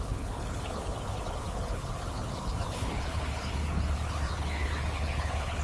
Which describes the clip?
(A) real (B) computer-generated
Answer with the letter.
B